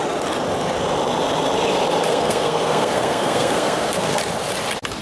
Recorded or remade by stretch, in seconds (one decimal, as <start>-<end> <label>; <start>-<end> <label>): 0.0-2.1 recorded; 2.1-4.2 remade; 4.2-5.0 recorded

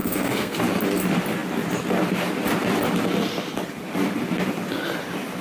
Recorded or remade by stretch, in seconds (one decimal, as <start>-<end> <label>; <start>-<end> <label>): 0.0-0.6 remade; 0.6-5.4 recorded

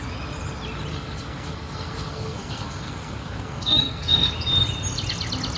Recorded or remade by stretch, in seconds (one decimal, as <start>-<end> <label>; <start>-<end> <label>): 0.0-0.9 recorded; 0.9-4.3 remade; 4.3-5.6 recorded

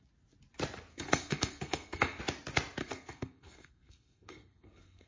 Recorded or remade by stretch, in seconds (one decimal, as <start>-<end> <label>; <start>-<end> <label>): 0.0-0.9 recorded; 0.9-2.2 remade; 2.2-2.8 recorded; 2.8-5.1 remade

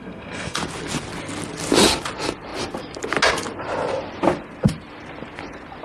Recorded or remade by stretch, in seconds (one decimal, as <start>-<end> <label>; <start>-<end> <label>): 0.0-0.6 remade; 0.6-5.8 recorded

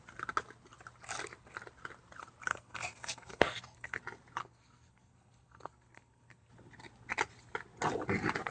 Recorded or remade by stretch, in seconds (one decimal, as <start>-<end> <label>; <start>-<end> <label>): 0.0-2.5 recorded; 2.5-4.0 remade; 4.0-4.4 recorded; 4.4-6.5 remade; 6.5-8.5 recorded

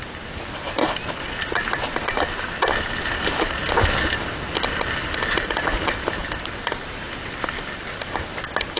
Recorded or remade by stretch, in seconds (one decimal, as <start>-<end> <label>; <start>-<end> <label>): 0.0-8.8 recorded